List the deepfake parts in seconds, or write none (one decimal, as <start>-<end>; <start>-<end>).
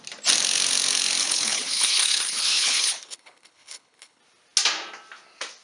1.2-4.2